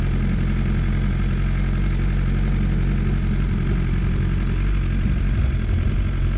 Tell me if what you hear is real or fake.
real